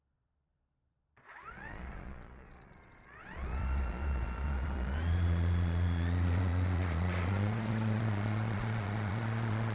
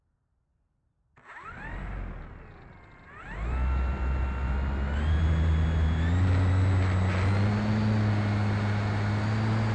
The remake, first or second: first